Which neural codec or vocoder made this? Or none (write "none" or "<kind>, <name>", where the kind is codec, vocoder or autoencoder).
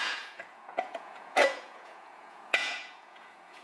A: vocoder, Vocos